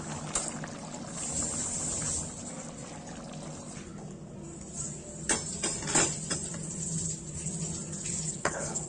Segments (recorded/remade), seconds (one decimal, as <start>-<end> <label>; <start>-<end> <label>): 0.0-8.3 recorded; 8.3-8.9 remade